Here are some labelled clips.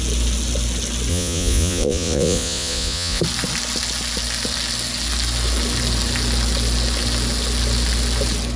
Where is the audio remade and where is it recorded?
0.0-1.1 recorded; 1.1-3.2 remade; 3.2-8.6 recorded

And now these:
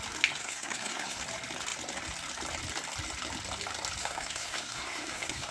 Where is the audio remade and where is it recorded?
0.0-0.4 recorded; 0.4-1.2 remade; 1.2-4.0 recorded; 4.0-5.5 remade

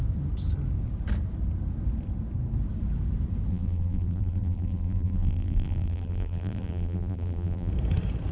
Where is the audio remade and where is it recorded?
0.0-3.5 recorded; 3.5-7.7 remade; 7.7-8.3 recorded

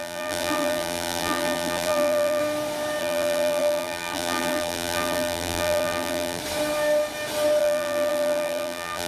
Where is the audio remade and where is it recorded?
0.0-2.4 remade; 2.4-3.0 recorded; 3.0-6.4 remade; 6.4-7.6 recorded; 7.6-9.1 remade

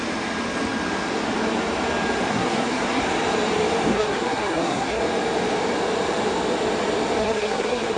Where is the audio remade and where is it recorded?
0.0-2.3 recorded; 2.3-3.0 remade; 3.0-3.9 recorded; 3.9-5.0 remade; 5.0-7.2 recorded; 7.2-8.0 remade

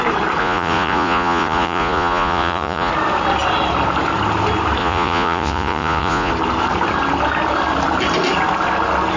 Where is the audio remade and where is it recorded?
0.0-0.4 recorded; 0.4-2.9 remade; 2.9-4.8 recorded; 4.8-6.3 remade; 6.3-9.2 recorded

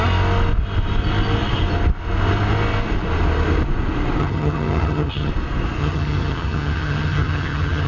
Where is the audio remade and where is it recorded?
0.0-4.2 recorded; 4.2-5.3 remade; 5.3-5.8 recorded; 5.8-7.9 remade

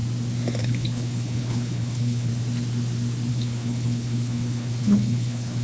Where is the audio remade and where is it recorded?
0.0-0.6 recorded; 0.6-2.3 remade; 2.3-3.3 recorded; 3.3-5.6 remade